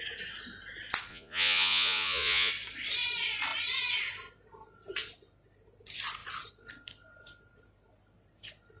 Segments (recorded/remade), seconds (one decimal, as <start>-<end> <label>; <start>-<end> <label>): 0.0-1.1 recorded; 1.1-2.5 remade; 2.5-8.8 recorded